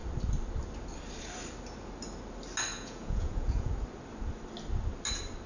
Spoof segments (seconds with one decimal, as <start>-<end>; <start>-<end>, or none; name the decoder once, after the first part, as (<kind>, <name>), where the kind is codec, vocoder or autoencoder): 2.7-3.7 (vocoder, Vocos)